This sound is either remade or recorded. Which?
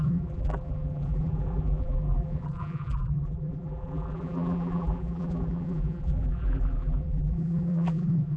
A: remade